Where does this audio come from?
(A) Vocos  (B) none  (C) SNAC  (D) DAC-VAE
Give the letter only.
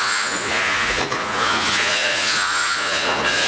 A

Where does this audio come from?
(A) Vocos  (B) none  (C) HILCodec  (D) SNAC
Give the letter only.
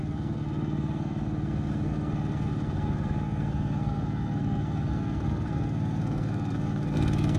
D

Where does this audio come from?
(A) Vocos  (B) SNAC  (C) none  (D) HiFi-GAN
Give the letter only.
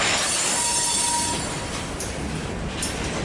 C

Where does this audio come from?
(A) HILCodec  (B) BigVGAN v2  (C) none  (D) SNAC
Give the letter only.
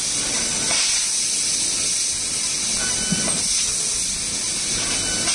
C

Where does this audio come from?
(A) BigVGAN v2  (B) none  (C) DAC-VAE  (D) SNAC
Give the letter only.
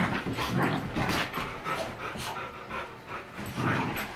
A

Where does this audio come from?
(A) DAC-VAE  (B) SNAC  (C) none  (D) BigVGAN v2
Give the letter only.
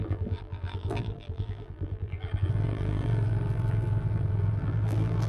D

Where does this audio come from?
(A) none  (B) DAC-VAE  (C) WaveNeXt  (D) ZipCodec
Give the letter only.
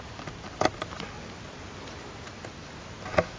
A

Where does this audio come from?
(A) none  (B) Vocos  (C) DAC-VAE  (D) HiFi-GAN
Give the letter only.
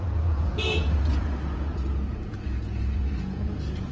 B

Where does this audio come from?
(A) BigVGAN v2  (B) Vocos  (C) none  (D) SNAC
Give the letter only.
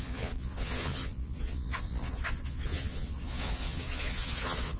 B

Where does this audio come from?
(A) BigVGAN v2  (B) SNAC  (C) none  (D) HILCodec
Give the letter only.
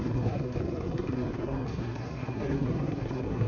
B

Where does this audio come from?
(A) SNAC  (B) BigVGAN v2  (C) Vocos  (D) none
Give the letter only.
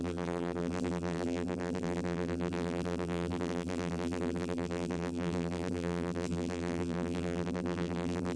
B